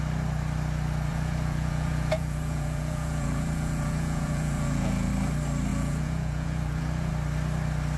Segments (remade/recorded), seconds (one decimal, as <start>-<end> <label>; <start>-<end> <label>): 0.0-1.1 recorded; 1.1-5.1 remade; 5.1-5.7 recorded; 5.7-7.1 remade; 7.1-8.0 recorded

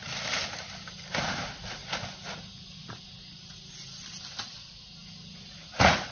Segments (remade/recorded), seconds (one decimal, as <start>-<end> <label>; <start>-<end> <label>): 0.0-1.2 recorded; 1.2-1.8 remade; 1.8-5.5 recorded; 5.5-6.1 remade

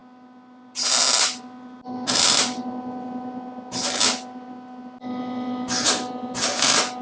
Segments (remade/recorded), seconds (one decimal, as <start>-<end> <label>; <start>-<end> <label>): 0.0-7.0 recorded

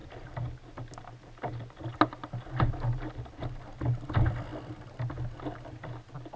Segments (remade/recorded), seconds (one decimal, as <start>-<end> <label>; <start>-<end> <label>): 0.0-6.4 recorded

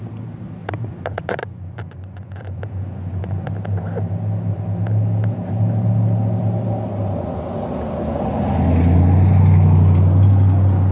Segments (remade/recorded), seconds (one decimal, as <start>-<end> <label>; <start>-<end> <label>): 0.0-0.6 recorded; 0.6-3.5 remade; 3.5-10.9 recorded

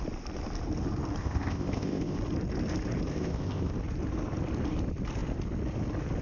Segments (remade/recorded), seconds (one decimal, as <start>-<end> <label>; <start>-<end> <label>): 0.0-1.2 recorded; 1.2-2.2 remade; 2.2-3.1 recorded; 3.1-3.7 remade; 3.7-6.2 recorded